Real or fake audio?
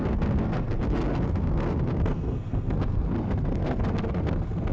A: fake